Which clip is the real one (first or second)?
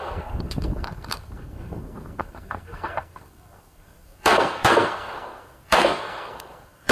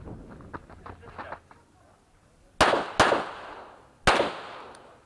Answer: second